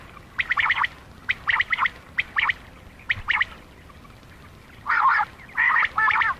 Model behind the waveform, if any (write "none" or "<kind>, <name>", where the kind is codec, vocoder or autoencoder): none